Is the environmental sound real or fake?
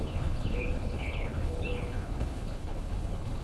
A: fake